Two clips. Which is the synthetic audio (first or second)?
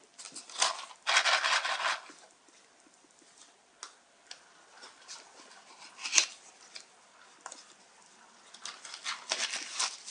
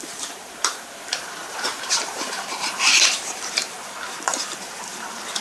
second